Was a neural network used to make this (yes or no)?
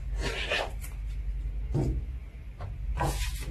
no